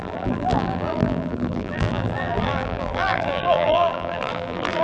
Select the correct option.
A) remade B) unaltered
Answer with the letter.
A